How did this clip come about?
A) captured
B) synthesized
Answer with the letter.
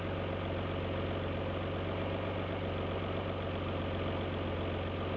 A